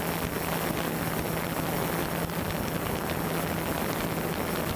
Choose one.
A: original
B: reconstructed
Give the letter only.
A